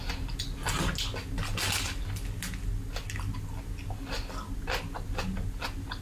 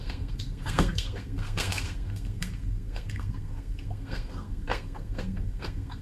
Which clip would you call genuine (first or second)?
first